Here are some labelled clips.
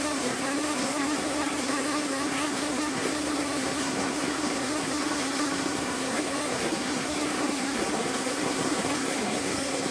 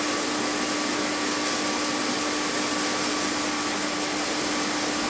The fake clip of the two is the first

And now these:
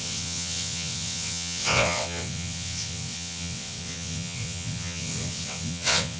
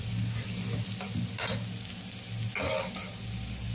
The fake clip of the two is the first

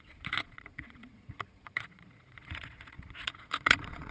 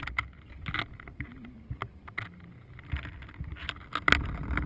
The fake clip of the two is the first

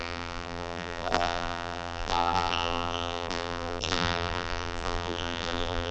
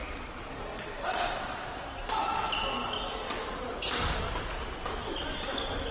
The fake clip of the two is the first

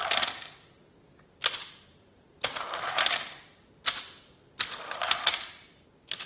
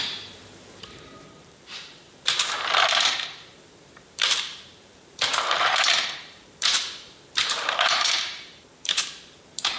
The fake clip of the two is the second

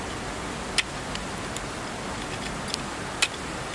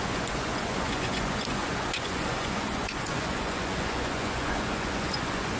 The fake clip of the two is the second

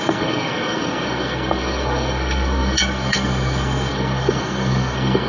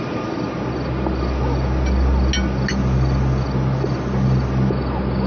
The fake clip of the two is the first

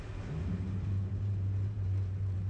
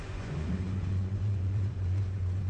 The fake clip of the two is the second